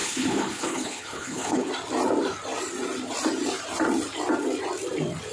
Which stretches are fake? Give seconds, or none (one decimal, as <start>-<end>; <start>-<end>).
0.0-1.7